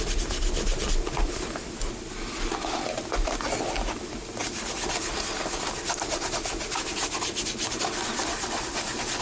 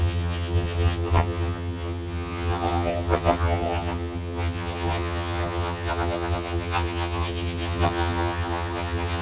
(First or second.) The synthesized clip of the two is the second